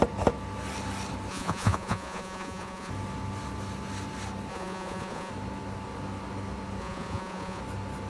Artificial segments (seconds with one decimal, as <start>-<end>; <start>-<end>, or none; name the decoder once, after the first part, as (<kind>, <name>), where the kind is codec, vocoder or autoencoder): 1.3-2.9 (vocoder, Vocos); 4.5-5.3; 6.8-7.6